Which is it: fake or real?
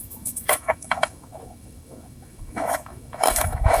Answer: fake